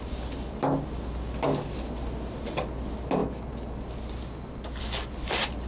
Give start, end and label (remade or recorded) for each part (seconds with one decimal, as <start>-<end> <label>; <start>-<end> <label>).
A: 0.0-5.7 recorded